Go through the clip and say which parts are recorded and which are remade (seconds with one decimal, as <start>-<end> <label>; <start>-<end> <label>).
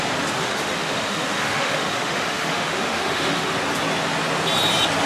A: 0.0-0.4 recorded; 0.4-3.5 remade; 3.5-5.1 recorded